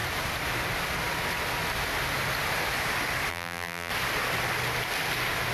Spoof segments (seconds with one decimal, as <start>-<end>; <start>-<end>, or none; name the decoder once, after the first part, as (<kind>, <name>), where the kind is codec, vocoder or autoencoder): 3.3-3.9 (vocoder, BigVGAN v2)